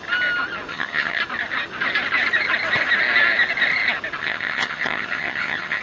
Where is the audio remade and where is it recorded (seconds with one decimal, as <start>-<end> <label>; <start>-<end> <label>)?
0.0-0.7 recorded; 0.7-1.2 remade; 1.2-4.2 recorded; 4.2-5.8 remade